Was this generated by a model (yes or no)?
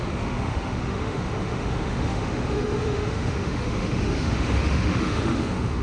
yes